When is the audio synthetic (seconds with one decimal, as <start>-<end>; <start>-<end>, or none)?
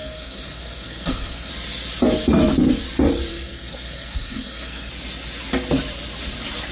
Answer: 0.0-1.5; 3.3-4.9